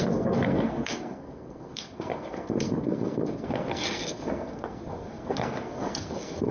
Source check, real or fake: fake